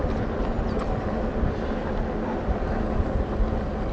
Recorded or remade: recorded